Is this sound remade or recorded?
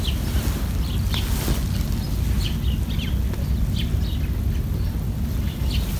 recorded